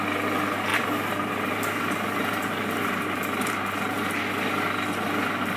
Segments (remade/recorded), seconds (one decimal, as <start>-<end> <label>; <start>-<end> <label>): 0.0-0.7 recorded; 0.7-4.1 remade; 4.1-5.6 recorded